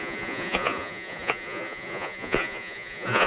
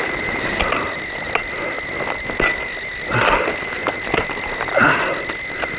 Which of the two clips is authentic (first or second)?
second